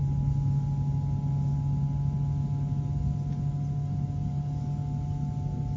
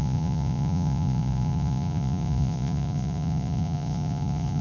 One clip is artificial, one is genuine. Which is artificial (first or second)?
second